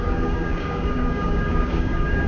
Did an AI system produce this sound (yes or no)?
yes